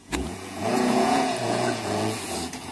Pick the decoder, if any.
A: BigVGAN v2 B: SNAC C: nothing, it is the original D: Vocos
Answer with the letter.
D